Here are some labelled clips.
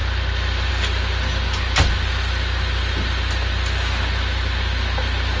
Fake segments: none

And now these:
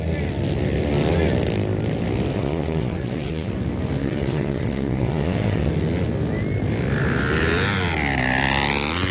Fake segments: 2.3-3.5 (vocoder, WaveNeXt); 4.0-5.7